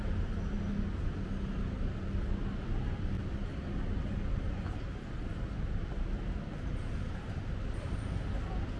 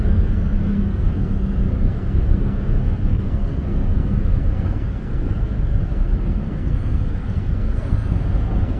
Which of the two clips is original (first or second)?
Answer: first